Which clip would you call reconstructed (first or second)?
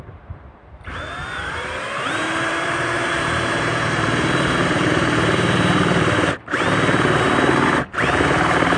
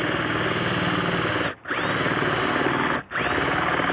first